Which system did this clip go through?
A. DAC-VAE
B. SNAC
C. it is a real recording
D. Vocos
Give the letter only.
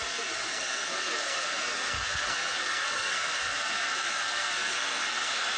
B